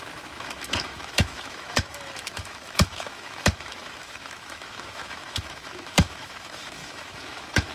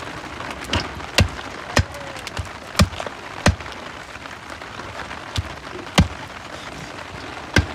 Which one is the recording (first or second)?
second